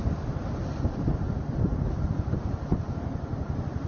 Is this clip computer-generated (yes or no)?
no